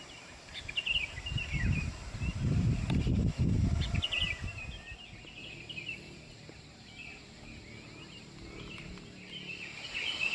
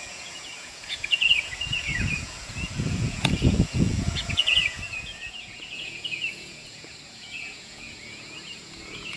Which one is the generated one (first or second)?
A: second